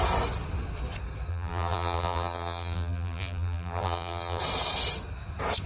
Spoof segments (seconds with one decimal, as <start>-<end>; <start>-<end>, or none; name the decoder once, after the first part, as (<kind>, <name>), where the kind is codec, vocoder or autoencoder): 1.3-4.4 (vocoder, BigVGAN v2)